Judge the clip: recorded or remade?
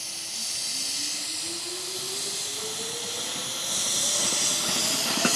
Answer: recorded